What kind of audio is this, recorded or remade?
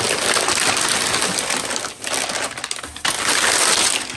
recorded